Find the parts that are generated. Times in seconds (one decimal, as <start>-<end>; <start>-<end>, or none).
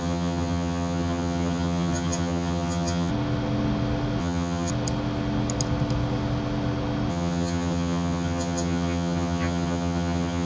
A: 0.0-3.1; 4.2-4.7; 7.1-10.5